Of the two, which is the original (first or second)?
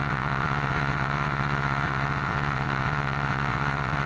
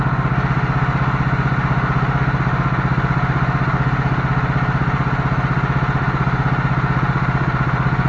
second